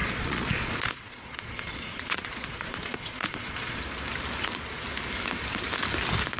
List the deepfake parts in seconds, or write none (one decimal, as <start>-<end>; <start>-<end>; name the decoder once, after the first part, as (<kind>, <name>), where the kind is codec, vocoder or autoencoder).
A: 0.0-3.8 (vocoder, Vocos)